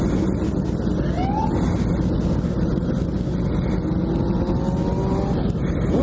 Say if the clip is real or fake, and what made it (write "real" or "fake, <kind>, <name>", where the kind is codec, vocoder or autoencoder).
real